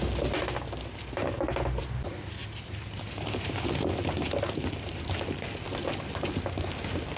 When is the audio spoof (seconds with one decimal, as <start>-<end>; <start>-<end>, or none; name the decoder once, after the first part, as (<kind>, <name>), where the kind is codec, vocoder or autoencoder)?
2.4-4.3 (vocoder, BigVGAN v2)